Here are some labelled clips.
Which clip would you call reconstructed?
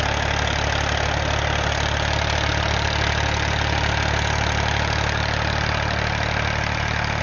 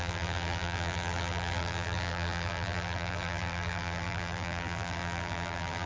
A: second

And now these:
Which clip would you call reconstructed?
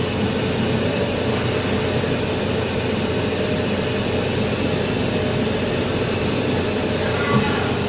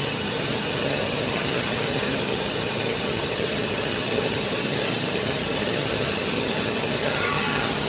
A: second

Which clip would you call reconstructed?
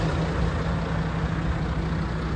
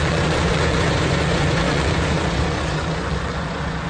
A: second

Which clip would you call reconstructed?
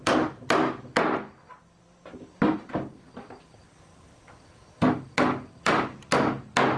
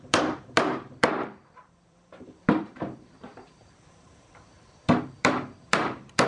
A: second